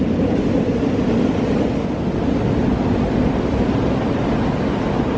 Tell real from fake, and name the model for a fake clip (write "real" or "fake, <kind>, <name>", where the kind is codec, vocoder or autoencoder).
real